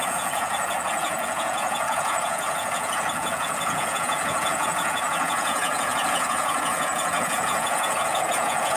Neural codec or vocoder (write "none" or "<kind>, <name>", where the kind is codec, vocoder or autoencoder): vocoder, Vocos